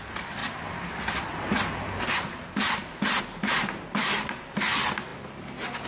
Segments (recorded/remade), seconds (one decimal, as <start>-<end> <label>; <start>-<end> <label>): 0.0-5.9 recorded